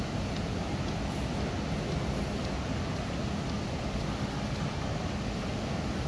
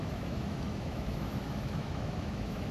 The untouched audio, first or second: first